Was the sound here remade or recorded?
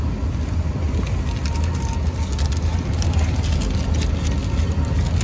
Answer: recorded